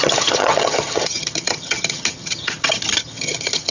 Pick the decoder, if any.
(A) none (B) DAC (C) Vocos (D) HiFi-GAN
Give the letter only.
D